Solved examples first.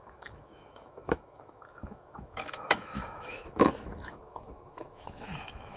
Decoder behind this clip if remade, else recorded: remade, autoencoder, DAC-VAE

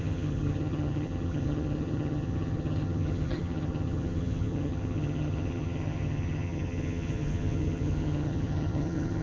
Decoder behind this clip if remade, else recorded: remade, vocoder, HiFi-GAN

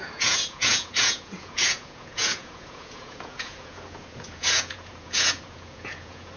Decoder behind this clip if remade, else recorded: remade, vocoder, Vocos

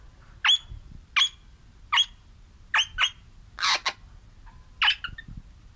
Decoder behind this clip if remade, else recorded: recorded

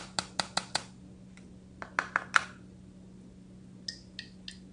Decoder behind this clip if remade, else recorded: recorded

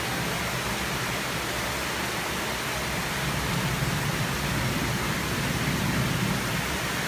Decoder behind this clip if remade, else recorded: recorded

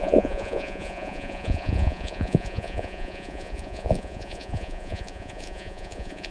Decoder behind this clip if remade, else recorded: remade, vocoder, Vocos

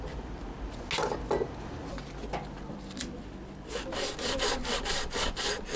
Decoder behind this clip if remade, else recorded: recorded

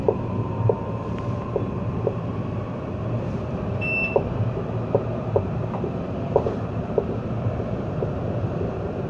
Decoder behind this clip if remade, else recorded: remade, vocoder, BigVGAN v2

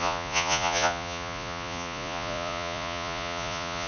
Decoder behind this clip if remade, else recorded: remade, vocoder, Vocos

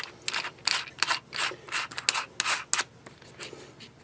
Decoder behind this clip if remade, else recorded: recorded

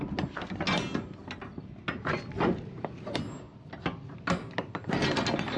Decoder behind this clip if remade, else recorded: recorded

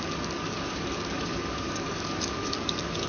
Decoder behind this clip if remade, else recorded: remade, codec, DAC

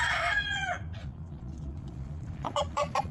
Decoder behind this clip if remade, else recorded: remade, vocoder, Vocos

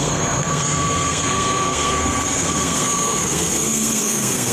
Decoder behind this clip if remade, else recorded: remade, codec, SNAC